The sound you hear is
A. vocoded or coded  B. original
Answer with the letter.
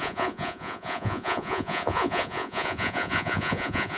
A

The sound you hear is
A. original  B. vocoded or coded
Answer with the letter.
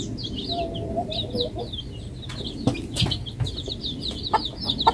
A